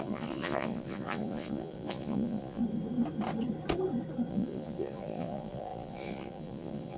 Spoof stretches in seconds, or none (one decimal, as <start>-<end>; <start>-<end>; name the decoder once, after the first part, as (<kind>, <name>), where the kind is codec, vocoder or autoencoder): 0.0-2.6 (vocoder, Vocos); 4.3-7.0